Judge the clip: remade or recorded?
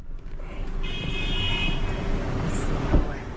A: remade